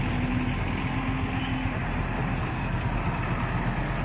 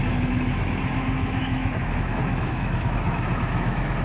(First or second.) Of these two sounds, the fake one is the second